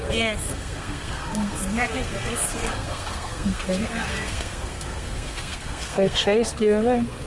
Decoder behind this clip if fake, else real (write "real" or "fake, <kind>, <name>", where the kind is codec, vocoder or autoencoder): fake, codec, SNAC